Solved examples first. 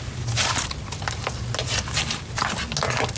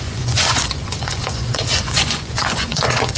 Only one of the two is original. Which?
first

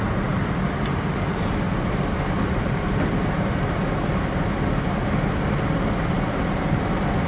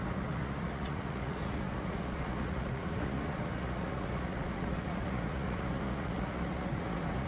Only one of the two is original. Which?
first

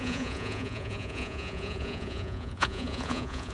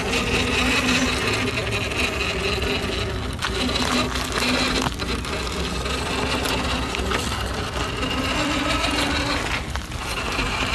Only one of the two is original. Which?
second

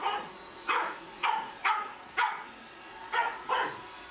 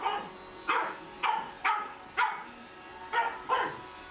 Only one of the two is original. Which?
second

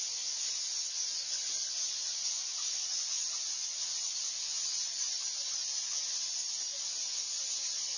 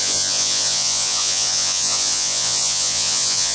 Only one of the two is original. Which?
first